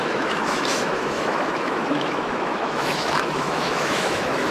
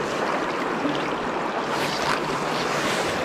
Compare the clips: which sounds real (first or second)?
second